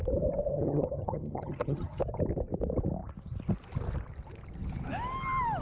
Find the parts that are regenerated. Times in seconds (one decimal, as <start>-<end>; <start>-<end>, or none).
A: 0.5-2.0